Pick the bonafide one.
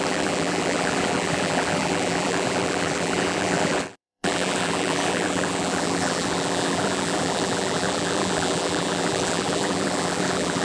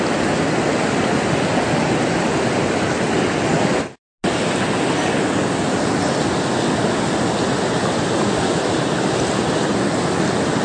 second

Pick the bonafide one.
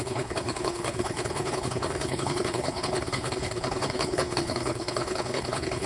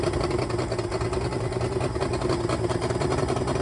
second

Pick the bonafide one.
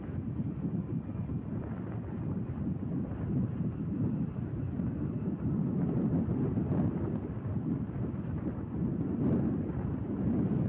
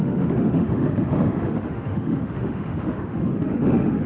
first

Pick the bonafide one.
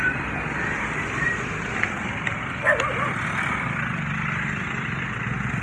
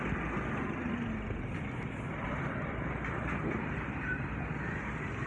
first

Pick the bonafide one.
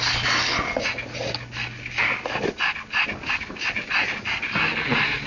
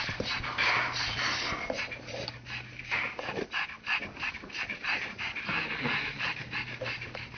first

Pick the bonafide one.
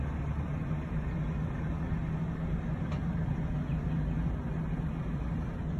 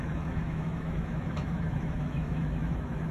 first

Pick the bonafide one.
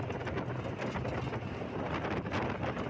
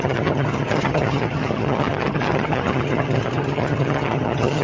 first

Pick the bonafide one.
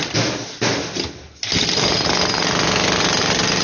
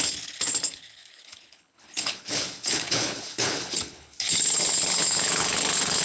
first